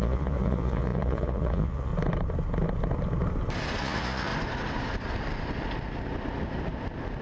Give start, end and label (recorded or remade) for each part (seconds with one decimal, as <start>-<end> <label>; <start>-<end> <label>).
0.0-1.9 remade; 1.9-3.8 recorded; 3.8-4.3 remade; 4.3-7.2 recorded